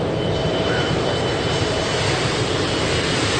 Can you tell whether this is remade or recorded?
remade